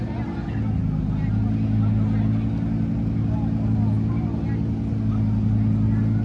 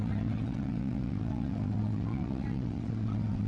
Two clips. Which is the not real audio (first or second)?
second